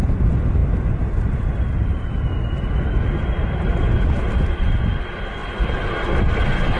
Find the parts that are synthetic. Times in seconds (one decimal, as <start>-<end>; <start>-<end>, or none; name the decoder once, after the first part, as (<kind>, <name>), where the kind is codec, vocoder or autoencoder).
none